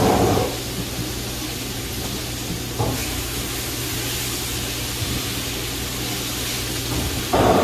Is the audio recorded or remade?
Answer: recorded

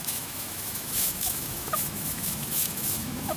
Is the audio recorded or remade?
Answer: remade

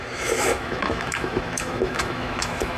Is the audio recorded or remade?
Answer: remade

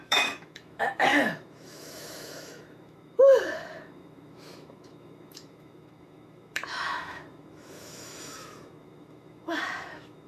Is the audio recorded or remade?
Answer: remade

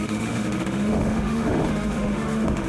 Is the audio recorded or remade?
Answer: remade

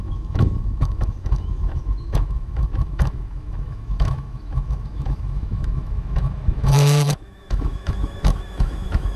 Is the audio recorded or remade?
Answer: remade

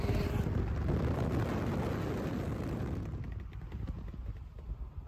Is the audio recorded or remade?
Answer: recorded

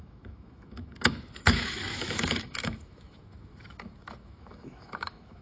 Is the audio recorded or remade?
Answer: remade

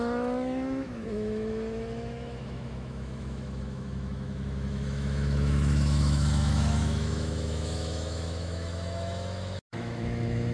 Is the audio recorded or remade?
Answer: remade